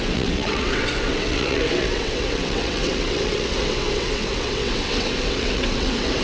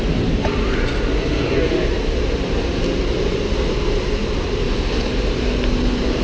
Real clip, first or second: second